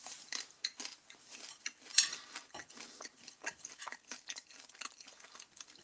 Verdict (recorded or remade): recorded